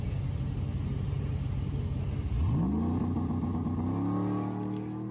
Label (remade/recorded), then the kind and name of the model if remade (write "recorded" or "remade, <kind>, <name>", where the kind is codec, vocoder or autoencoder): recorded